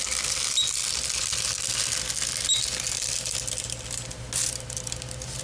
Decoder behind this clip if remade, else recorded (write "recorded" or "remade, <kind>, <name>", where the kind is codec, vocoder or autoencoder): recorded